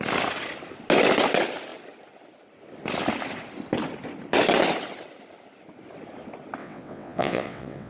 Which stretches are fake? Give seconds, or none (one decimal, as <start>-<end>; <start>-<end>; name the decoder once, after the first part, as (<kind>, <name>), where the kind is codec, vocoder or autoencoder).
6.6-7.9 (vocoder, WaveNeXt)